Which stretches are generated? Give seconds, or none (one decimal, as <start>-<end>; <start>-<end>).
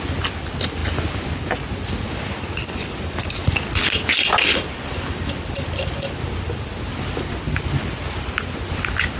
none